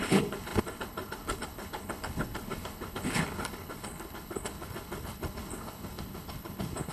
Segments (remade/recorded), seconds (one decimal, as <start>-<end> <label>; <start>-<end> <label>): 0.0-6.9 remade